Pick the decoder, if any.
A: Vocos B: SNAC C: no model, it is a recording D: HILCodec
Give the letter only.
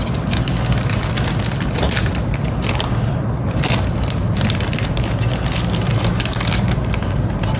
C